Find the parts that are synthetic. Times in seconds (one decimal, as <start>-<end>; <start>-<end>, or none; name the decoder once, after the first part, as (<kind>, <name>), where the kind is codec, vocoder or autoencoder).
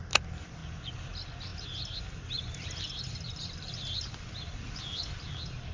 0.0-0.6 (vocoder, BigVGAN v2); 1.1-1.5; 2.0-5.7